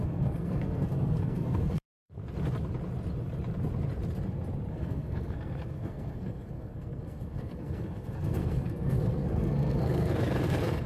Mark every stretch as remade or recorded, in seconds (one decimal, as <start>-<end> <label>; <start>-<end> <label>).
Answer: 0.0-2.2 remade; 2.2-4.7 recorded; 4.7-10.9 remade